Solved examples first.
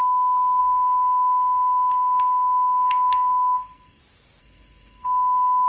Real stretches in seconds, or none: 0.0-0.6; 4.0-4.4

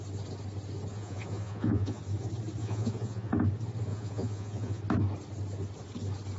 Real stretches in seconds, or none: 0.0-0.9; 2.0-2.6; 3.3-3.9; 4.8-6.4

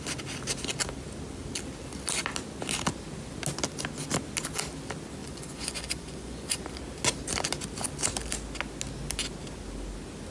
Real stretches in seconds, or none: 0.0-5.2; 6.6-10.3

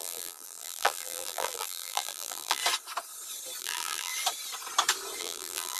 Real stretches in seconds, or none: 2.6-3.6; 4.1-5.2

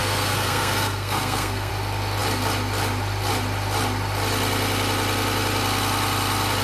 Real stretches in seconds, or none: 1.7-6.6

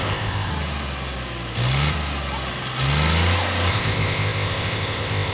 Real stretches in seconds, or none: 0.5-3.7

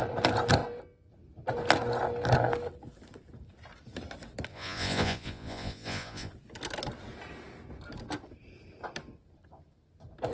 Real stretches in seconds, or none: 0.0-4.5; 6.3-10.3

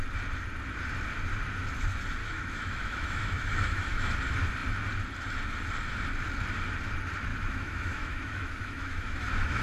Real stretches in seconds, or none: 0.0-2.2; 4.1-7.3